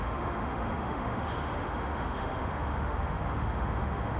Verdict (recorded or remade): remade